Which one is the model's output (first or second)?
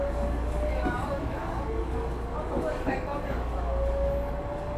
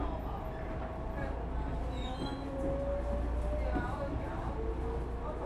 first